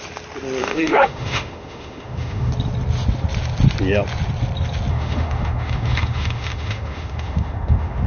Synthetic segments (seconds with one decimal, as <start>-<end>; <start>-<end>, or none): 0.6-2.5; 4.9-8.1